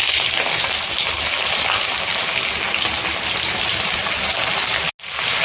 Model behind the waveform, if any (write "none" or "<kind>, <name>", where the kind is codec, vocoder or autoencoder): none